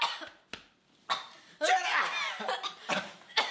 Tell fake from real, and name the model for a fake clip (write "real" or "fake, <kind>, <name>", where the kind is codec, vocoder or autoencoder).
real